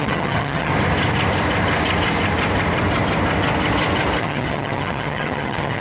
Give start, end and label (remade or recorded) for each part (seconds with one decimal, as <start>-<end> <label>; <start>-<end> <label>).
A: 0.0-0.7 remade; 0.7-4.2 recorded; 4.2-5.8 remade